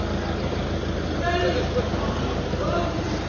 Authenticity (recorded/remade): recorded